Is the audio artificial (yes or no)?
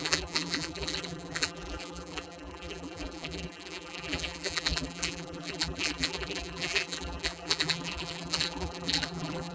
yes